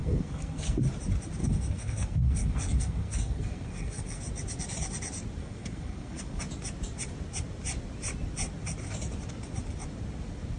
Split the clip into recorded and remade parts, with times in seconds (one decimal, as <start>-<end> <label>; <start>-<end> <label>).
0.0-0.8 remade; 0.8-1.4 recorded; 1.4-4.2 remade; 4.2-5.4 recorded; 5.4-6.4 remade; 6.4-10.6 recorded